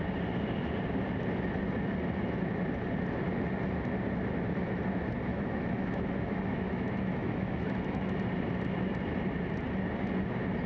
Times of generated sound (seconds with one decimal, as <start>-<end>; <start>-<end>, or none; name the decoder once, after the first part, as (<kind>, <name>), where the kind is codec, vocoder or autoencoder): 5.3-8.1 (autoencoder, DAC-VAE)